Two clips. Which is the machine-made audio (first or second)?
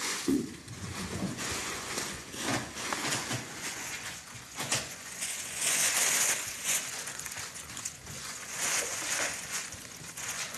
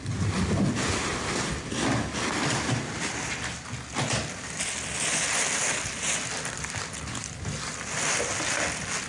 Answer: first